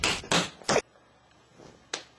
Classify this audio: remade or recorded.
recorded